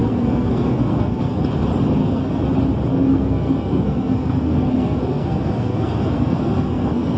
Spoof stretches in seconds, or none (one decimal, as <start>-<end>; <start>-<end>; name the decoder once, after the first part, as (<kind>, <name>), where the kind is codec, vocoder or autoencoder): 0.0-1.4 (codec, SNAC); 2.0-2.5; 2.9-7.2